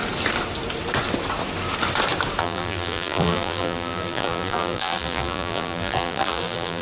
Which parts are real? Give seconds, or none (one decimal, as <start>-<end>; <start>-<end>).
0.0-2.4